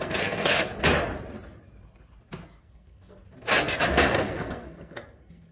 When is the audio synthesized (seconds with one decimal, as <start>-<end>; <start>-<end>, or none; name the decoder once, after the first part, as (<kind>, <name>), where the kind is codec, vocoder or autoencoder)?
0.0-0.7 (codec, SNAC); 2.6-3.2; 3.9-5.5